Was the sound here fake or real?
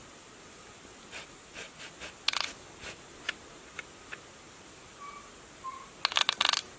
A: real